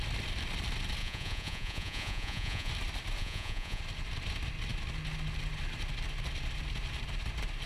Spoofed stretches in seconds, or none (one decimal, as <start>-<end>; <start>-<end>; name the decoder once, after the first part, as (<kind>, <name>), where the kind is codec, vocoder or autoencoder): 1.0-2.7 (vocoder, Vocos); 3.2-3.8

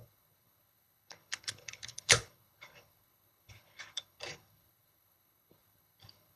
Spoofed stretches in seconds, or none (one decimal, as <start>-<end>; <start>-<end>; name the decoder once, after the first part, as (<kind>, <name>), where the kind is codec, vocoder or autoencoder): 0.0-6.4 (codec, HILCodec)

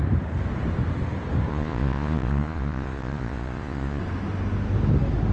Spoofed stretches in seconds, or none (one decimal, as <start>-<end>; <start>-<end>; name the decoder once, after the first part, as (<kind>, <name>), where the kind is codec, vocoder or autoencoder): 1.5-4.0 (vocoder, Vocos)

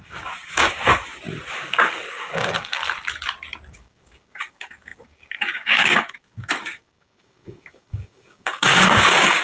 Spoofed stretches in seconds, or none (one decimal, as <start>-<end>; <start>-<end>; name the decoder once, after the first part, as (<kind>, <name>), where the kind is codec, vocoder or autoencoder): 0.0-0.9 (codec, DAC); 1.5-2.8; 3.7-9.4